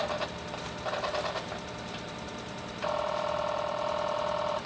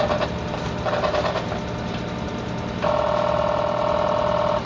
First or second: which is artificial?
first